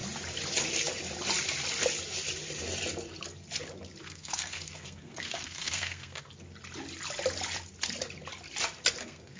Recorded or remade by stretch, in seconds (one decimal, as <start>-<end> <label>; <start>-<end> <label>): 0.0-4.0 recorded; 4.0-6.3 remade; 6.3-9.0 recorded; 9.0-9.4 remade